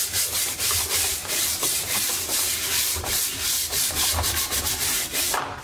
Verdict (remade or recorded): remade